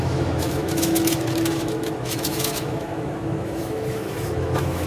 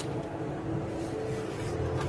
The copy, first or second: first